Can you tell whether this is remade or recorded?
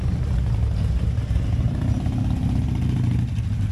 recorded